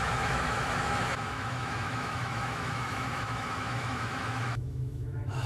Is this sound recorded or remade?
remade